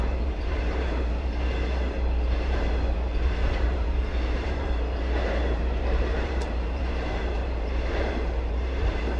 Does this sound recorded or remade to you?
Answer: remade